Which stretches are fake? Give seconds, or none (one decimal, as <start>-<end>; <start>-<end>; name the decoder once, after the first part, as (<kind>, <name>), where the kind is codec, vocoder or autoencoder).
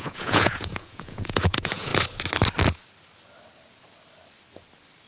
0.0-1.9 (vocoder, Vocos)